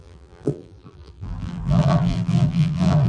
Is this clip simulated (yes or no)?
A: yes